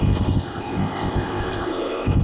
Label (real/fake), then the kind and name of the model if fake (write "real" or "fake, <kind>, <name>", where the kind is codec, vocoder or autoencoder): fake, codec, ZipCodec